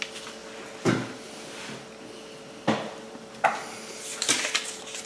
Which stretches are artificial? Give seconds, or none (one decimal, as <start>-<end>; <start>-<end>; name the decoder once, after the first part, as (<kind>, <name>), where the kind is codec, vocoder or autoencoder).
none